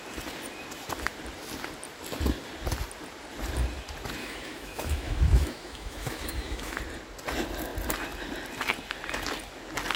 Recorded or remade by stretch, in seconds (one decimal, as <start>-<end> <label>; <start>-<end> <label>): 0.0-4.2 recorded; 4.2-6.8 remade; 6.8-10.0 recorded